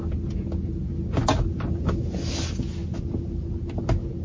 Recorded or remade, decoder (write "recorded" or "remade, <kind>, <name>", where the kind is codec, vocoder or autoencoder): recorded